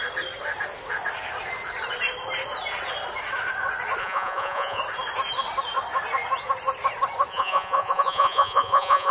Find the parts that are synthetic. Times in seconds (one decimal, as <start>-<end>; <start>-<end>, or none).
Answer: 4.0-4.8; 7.3-9.1